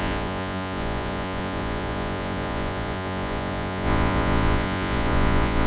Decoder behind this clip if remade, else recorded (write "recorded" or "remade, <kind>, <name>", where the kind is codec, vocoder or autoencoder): remade, vocoder, Vocos